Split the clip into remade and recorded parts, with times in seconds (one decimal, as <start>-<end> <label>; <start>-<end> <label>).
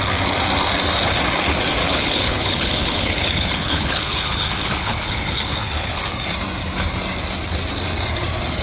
0.0-1.8 recorded; 1.8-6.0 remade; 6.0-8.6 recorded